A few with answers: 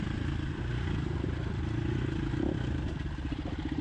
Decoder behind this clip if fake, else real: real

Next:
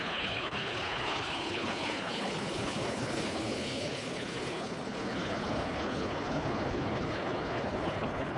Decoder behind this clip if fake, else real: fake, codec, HILCodec